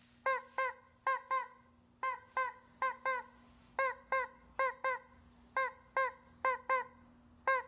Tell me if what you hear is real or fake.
real